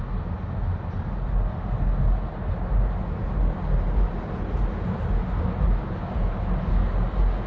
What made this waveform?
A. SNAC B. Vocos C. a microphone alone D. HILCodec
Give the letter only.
C